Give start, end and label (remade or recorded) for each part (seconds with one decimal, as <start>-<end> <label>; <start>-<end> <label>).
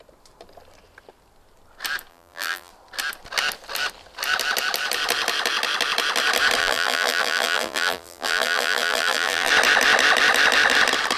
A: 0.0-2.1 recorded; 2.1-2.7 remade; 2.7-6.6 recorded; 6.6-9.5 remade; 9.5-11.2 recorded